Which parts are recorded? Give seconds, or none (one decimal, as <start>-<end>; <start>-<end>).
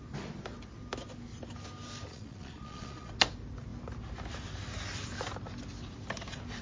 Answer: 0.0-2.1; 3.1-6.6